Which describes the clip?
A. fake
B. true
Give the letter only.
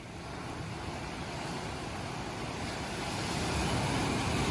B